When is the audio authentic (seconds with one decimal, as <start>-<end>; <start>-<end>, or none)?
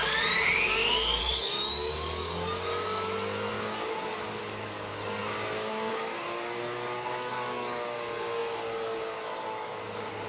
0.0-1.2; 2.7-3.5